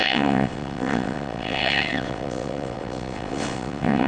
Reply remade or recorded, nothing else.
remade